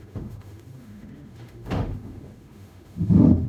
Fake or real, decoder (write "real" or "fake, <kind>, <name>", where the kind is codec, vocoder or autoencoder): fake, autoencoder, DAC-VAE